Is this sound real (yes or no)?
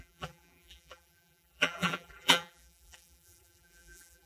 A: no